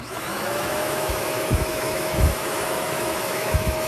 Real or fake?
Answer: fake